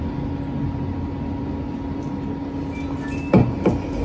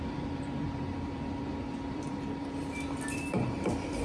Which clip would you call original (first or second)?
first